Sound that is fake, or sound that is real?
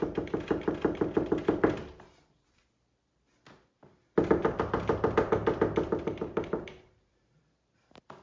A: real